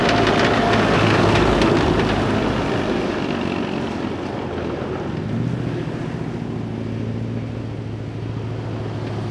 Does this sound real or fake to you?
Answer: real